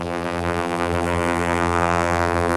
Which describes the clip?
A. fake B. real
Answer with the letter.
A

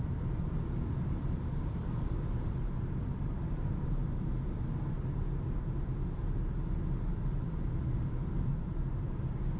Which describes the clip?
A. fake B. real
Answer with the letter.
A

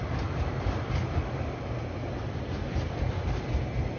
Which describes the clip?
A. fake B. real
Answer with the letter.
B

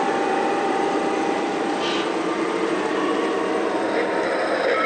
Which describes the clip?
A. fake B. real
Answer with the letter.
A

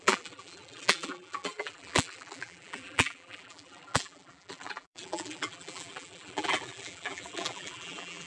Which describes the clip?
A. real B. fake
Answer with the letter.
B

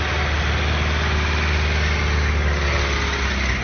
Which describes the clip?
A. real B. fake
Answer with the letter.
A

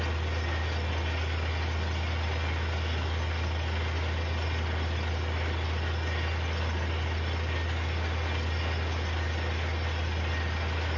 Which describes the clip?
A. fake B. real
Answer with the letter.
B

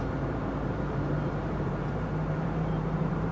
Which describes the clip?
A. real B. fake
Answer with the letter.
B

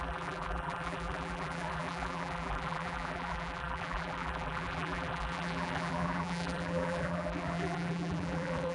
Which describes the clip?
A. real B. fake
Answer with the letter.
B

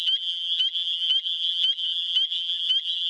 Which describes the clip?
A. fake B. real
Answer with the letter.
A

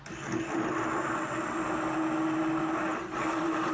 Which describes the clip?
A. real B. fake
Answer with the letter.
A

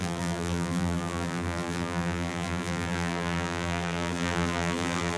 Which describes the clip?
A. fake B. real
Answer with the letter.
A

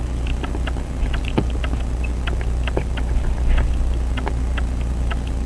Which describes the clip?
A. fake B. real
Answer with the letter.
B